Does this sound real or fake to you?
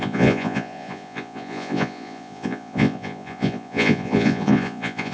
fake